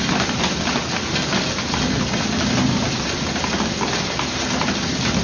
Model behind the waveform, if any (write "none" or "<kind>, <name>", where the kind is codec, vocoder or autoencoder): none